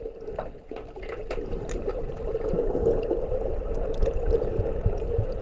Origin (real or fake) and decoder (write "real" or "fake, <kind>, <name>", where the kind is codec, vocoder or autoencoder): real